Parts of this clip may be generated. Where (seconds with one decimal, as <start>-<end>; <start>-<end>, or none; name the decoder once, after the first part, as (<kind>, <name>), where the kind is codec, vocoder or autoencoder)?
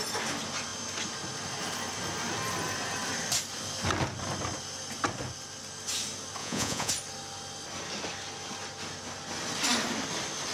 6.4-6.9 (vocoder, Vocos)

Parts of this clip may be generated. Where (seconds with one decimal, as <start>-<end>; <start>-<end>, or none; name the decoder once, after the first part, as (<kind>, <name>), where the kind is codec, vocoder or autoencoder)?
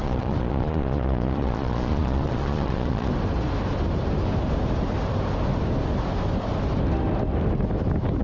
0.0-3.1 (vocoder, Vocos)